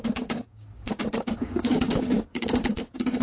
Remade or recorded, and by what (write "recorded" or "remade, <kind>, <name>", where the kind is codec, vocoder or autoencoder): remade, codec, DAC